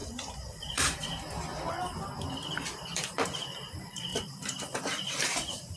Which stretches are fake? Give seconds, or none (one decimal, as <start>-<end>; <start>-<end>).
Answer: 0.6-1.5; 2.5-5.8